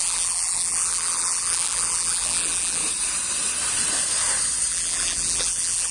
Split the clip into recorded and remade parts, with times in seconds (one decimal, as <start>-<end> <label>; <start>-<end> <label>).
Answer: 0.0-2.8 remade; 2.8-4.7 recorded; 4.7-5.9 remade